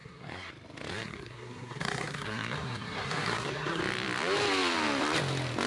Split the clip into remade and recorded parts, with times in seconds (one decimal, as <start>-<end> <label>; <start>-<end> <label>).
0.0-0.5 remade; 0.5-0.9 recorded; 0.9-3.8 remade; 3.8-5.7 recorded